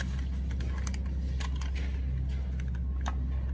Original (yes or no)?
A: yes